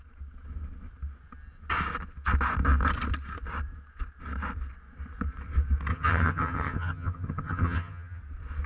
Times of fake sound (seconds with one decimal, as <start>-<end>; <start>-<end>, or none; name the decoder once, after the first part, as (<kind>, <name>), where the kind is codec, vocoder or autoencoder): 5.9-8.2 (vocoder, HiFi-GAN)